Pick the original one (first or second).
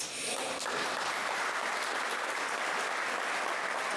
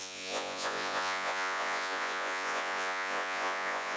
first